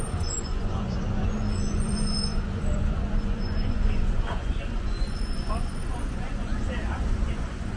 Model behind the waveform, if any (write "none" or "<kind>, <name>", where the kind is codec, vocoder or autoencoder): vocoder, Vocos